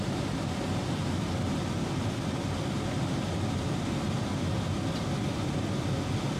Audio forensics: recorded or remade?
recorded